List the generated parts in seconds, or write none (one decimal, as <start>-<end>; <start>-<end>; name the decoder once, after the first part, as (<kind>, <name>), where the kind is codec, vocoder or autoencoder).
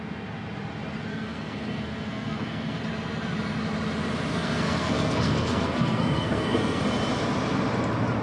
1.1-2.8 (codec, SNAC); 4.3-6.8